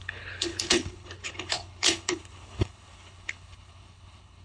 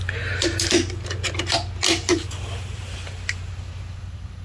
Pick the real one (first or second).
second